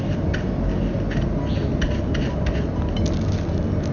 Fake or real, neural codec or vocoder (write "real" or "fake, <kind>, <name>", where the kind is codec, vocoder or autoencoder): real